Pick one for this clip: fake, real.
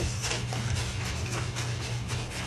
fake